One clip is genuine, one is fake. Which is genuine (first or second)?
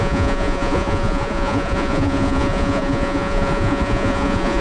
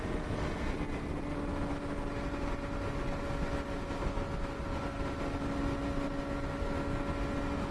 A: second